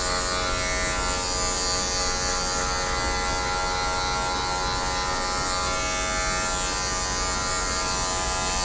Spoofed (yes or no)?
no